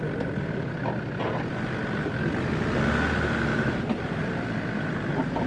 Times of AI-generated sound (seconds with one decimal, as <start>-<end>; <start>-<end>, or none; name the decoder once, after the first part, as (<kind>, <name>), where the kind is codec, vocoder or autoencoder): 3.5-4.2 (vocoder, BigVGAN v2)